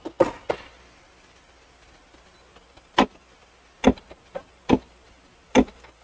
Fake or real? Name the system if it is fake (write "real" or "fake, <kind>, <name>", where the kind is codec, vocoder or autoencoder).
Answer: real